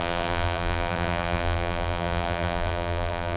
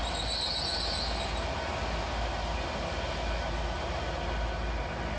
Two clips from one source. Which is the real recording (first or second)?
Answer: second